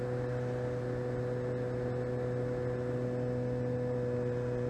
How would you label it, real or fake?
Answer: real